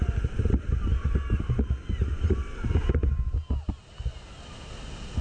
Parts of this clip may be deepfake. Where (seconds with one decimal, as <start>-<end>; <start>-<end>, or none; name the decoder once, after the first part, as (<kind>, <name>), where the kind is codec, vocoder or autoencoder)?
none